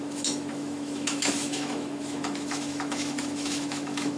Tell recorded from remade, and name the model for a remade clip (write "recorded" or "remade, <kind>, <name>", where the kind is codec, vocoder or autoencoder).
remade, autoencoder, DAC-VAE